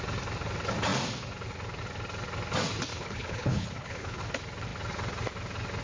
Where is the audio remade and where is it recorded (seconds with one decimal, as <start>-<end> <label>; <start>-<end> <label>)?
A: 0.0-2.9 recorded; 2.9-4.2 remade; 4.2-5.8 recorded